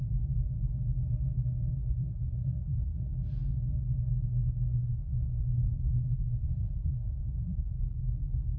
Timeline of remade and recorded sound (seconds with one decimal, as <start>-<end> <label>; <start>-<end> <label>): 0.0-1.8 recorded; 1.8-3.1 remade; 3.1-4.7 recorded; 4.7-7.8 remade; 7.8-8.6 recorded